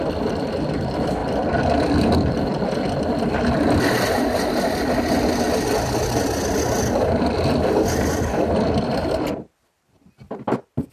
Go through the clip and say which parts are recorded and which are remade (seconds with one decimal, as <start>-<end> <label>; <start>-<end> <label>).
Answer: 0.0-10.9 recorded